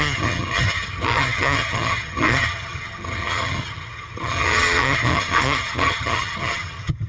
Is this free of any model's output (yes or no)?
no